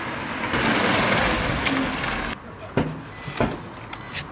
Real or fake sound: real